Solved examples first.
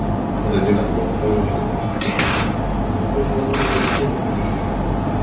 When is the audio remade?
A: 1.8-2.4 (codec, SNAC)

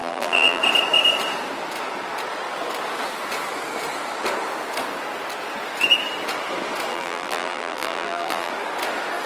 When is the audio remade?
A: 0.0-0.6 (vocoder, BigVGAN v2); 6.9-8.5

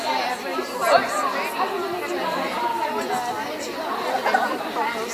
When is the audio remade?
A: none

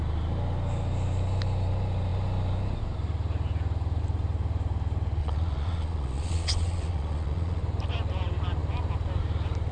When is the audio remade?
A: 5.2-7.6 (vocoder, Vocos)

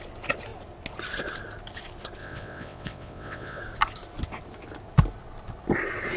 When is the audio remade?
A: 2.2-3.6 (vocoder, WaveNeXt)